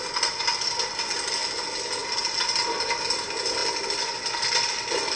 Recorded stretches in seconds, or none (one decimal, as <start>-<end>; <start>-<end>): 0.0-5.2